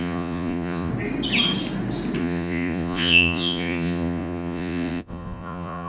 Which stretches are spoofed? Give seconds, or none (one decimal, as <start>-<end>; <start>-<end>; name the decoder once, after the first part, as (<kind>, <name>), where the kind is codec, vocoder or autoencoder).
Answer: 0.0-0.9 (vocoder, Vocos); 2.2-5.9